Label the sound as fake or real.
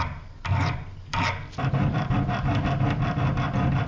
real